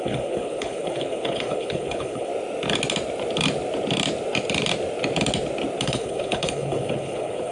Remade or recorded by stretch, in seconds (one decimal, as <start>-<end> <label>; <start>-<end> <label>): 0.0-2.3 remade; 2.3-5.8 recorded; 5.8-7.5 remade